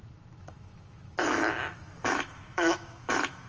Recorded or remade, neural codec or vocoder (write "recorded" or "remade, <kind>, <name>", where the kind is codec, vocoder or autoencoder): remade, autoencoder, DAC-VAE